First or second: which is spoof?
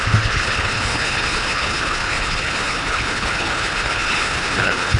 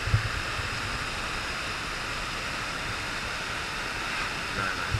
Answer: first